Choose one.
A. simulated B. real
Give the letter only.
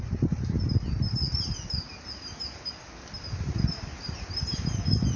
B